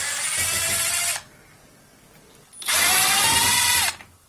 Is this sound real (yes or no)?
no